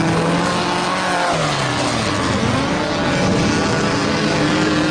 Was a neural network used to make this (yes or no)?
no